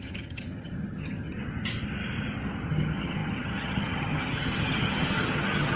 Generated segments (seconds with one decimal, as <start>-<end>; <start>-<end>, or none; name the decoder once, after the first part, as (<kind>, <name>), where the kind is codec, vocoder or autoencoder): 0.0-1.3 (vocoder, HiFi-GAN); 2.7-5.8